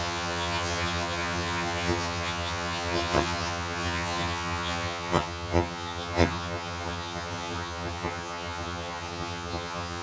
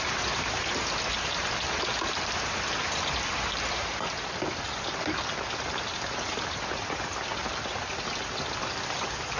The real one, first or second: second